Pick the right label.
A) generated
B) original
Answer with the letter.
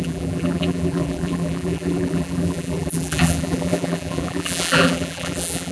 A